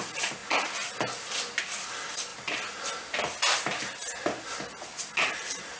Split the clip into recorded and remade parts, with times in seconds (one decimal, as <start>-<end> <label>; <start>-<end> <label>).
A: 0.0-5.8 recorded